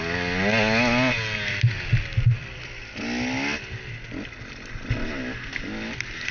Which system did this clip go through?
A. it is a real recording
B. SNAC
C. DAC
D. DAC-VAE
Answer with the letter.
A